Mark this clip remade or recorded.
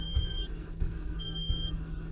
remade